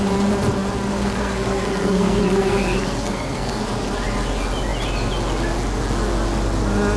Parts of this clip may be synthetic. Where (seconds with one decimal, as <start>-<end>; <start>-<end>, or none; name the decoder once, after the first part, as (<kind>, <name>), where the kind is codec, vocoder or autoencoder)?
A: 0.9-3.6 (codec, SNAC)